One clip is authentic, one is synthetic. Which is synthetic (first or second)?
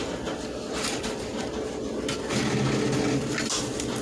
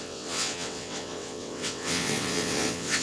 second